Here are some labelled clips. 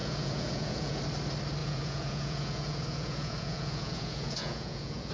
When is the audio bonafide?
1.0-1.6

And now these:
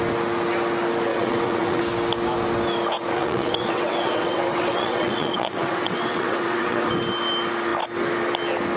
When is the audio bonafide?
0.0-1.1; 1.8-3.0; 6.9-8.8

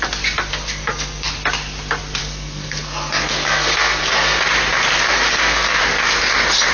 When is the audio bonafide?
0.0-0.5; 1.3-2.2; 4.4-5.1; 5.8-6.7

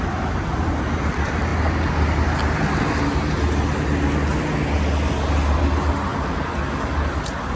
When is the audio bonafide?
0.0-6.1; 7.0-7.6

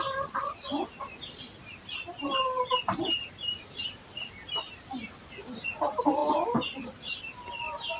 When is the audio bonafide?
0.0-8.0